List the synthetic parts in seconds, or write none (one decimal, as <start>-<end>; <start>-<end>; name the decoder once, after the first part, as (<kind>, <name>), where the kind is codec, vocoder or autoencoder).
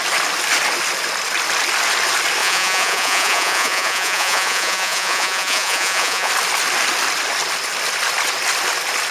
2.4-6.3 (vocoder, Vocos)